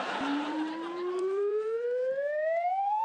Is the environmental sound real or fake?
fake